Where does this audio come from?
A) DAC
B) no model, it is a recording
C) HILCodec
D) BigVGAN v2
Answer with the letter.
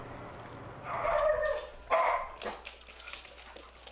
B